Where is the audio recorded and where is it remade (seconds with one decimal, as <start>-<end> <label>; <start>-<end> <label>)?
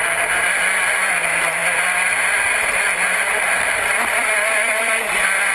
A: 0.0-5.5 recorded